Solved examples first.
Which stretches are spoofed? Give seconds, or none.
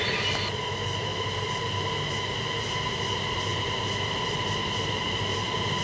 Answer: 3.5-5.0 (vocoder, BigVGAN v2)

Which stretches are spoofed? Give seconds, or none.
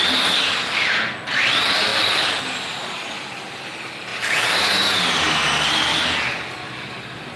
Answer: none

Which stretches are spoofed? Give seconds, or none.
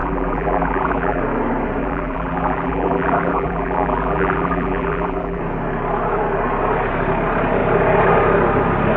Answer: 0.0-1.2 (vocoder, BigVGAN v2); 1.8-5.4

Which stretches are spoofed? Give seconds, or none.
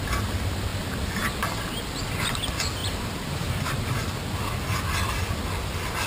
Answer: 2.8-4.1 (vocoder, BigVGAN v2)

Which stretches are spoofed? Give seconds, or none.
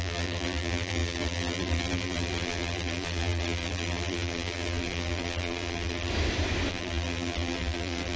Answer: 0.0-6.1 (vocoder, BigVGAN v2); 6.7-8.2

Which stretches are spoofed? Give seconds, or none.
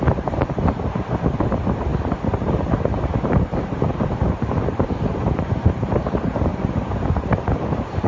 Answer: 0.0-1.9 (vocoder, BigVGAN v2); 2.5-8.1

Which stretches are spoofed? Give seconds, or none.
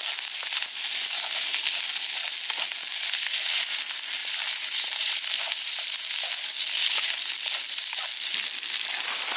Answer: 4.2-5.3 (vocoder, BigVGAN v2)